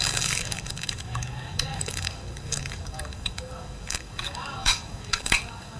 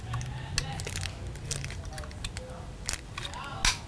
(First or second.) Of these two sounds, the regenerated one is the first